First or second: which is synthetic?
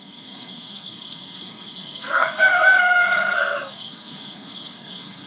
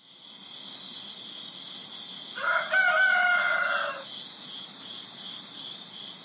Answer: first